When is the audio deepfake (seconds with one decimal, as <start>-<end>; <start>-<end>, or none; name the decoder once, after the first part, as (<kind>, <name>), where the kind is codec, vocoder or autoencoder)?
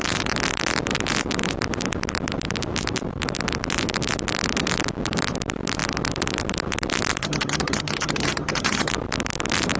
7.2-8.9 (vocoder, HiFi-GAN)